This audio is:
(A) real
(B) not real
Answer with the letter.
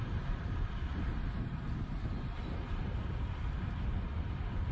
B